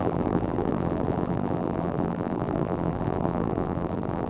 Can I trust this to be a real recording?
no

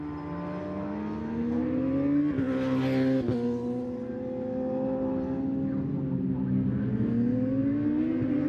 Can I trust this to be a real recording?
yes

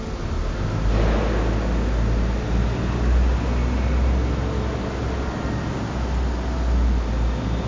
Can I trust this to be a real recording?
yes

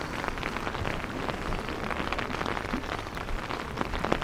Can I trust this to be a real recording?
yes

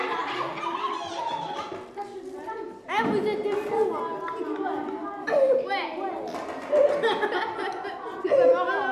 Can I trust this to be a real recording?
yes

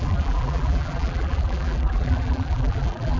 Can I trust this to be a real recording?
no